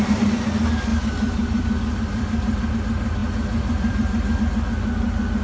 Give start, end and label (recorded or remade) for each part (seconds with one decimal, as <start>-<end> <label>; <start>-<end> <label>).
0.0-0.9 recorded; 0.9-2.7 remade; 2.7-3.2 recorded; 3.2-4.4 remade; 4.4-5.4 recorded